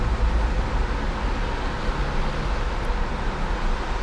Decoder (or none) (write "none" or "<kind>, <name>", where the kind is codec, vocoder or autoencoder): none